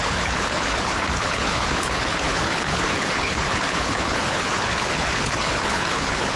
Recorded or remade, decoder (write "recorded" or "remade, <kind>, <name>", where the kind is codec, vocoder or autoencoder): remade, codec, HILCodec